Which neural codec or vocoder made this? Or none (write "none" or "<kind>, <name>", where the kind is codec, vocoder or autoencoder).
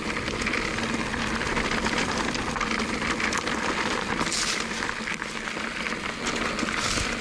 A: none